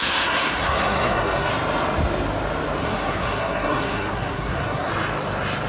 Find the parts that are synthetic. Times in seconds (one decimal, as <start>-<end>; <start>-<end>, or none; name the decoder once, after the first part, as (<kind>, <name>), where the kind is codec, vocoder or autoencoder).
0.0-1.5 (codec, SNAC); 2.8-4.9